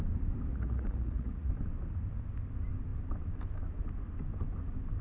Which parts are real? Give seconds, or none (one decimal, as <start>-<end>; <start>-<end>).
0.0-0.5; 1.5-5.0